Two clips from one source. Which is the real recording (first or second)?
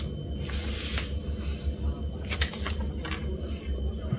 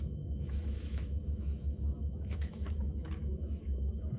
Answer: first